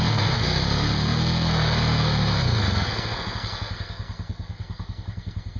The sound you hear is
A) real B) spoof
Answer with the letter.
B